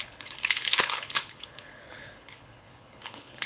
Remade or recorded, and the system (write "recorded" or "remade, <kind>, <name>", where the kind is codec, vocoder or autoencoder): remade, codec, HILCodec